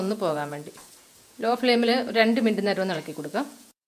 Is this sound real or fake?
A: fake